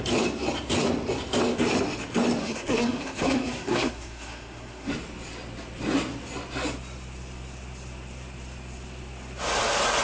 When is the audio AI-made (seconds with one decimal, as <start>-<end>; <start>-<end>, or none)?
2.4-4.9